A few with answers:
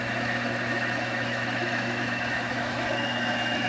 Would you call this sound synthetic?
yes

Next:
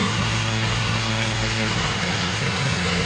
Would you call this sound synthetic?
yes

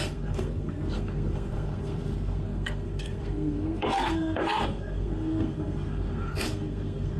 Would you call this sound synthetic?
yes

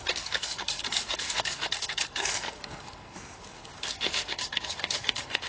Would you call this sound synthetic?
yes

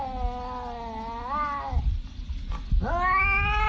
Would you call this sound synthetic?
no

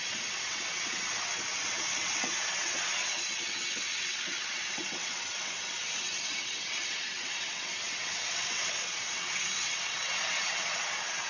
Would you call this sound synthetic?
yes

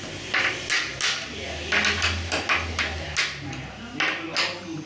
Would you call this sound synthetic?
no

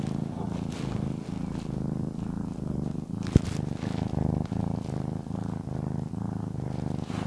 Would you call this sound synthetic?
no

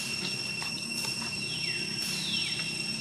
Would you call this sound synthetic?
no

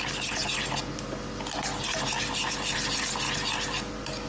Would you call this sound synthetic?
no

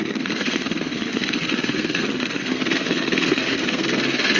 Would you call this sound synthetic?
yes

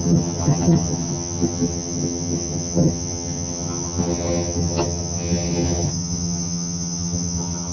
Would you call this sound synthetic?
yes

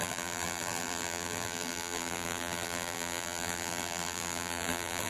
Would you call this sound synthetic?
yes